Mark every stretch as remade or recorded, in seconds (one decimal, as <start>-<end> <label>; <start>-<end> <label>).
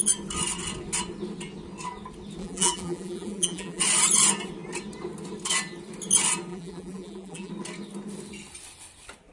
0.0-2.4 recorded; 2.4-3.8 remade; 3.8-6.5 recorded; 6.5-7.5 remade; 7.5-9.3 recorded